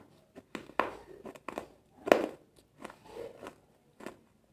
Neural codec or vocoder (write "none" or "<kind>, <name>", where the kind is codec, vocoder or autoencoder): none